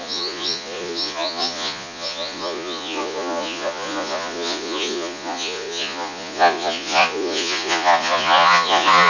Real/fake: fake